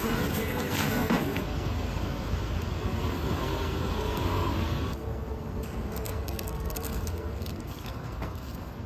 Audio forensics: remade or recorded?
remade